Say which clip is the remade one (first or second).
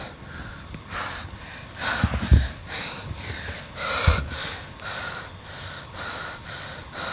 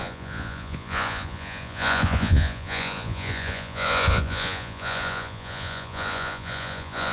second